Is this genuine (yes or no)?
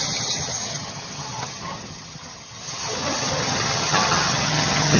no